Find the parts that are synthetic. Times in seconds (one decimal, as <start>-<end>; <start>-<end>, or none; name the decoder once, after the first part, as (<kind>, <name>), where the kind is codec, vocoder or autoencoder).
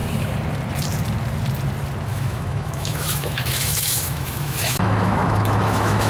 2.1-6.1 (autoencoder, DAC-VAE)